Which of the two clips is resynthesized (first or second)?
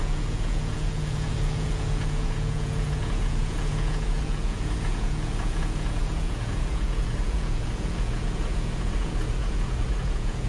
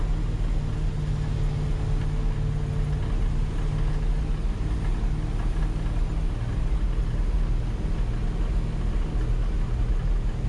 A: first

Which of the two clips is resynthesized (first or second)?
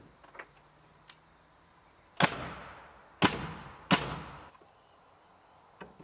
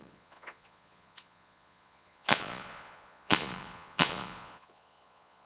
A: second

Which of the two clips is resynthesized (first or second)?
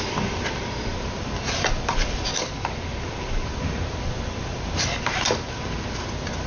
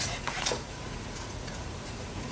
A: second